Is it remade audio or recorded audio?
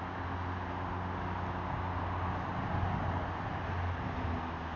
recorded